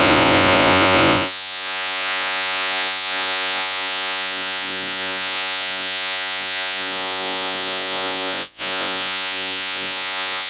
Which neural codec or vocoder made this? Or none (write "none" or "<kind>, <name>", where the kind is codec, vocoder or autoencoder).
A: vocoder, Vocos